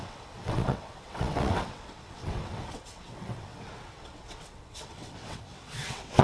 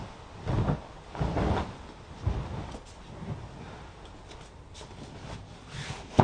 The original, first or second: second